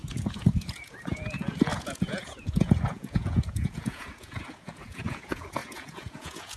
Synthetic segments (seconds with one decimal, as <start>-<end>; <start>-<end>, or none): 0.0-6.6